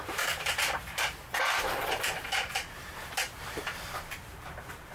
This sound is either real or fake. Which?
fake